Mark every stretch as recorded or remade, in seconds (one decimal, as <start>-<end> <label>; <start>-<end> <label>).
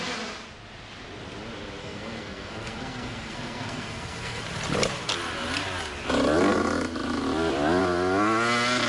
0.0-1.8 recorded; 1.8-4.4 remade; 4.4-8.9 recorded